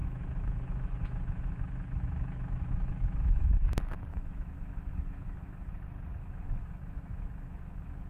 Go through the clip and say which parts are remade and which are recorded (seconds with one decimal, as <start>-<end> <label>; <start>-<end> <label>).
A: 0.0-3.5 remade; 3.5-4.1 recorded; 4.1-5.7 remade; 5.7-6.2 recorded; 6.2-8.1 remade